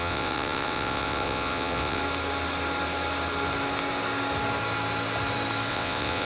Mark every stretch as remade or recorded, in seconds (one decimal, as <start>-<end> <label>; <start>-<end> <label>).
0.0-2.0 remade; 2.0-5.7 recorded; 5.7-6.2 remade